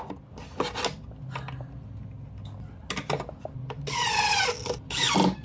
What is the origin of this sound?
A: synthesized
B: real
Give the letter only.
B